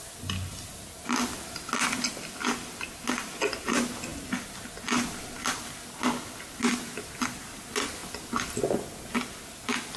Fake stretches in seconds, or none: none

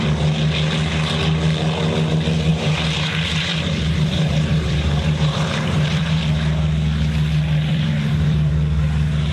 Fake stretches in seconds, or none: 2.5-6.2 (vocoder, BigVGAN v2); 7.7-8.5

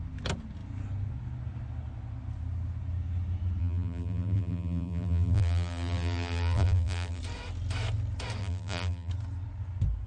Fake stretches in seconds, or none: 3.6-7.2 (vocoder, BigVGAN v2); 8.4-9.1

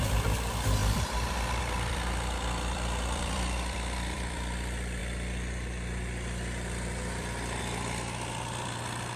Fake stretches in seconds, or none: 0.0-9.2 (vocoder, BigVGAN v2)

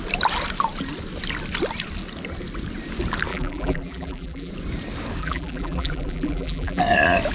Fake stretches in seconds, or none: 3.3-4.5 (vocoder, BigVGAN v2); 5.2-6.8

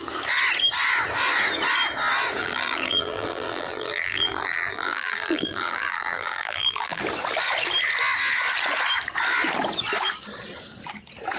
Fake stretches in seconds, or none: 2.4-7.0 (vocoder, BigVGAN v2)